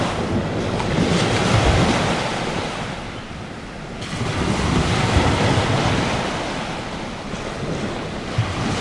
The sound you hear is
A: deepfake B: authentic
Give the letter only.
B